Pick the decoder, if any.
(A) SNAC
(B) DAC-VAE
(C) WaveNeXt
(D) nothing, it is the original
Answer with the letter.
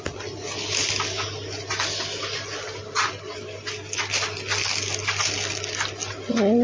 D